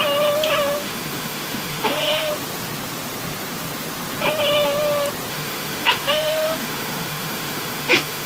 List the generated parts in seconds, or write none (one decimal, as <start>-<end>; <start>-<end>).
0.8-2.3; 5.3-8.3